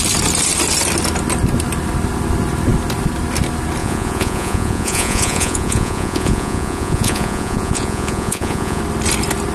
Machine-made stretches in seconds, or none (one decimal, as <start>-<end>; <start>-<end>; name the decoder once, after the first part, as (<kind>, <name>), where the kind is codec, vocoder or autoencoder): 3.8-8.8 (vocoder, Vocos)